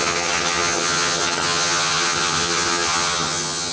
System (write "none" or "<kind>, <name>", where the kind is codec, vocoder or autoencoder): vocoder, HiFi-GAN